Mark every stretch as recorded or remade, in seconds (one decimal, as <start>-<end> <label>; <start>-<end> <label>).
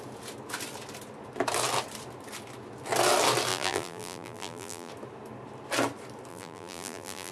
0.0-3.5 recorded; 3.5-4.9 remade; 4.9-6.3 recorded; 6.3-7.3 remade